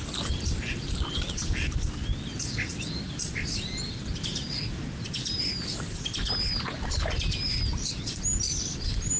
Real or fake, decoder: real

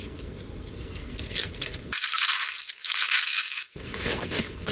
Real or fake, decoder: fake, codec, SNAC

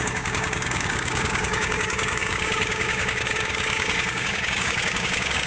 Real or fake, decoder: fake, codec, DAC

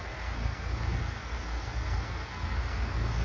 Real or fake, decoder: fake, codec, SNAC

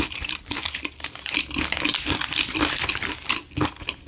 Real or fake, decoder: real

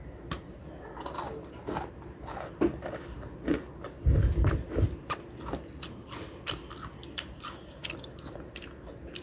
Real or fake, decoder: real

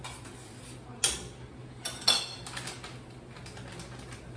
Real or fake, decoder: real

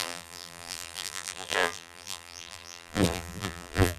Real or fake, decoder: fake, vocoder, BigVGAN v2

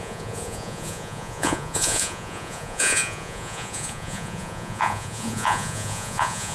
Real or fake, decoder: fake, vocoder, Vocos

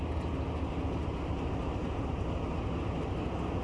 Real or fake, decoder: real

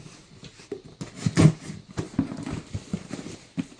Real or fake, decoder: real